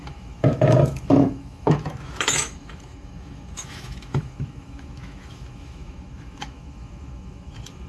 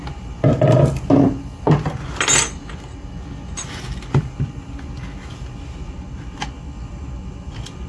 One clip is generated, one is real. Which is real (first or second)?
second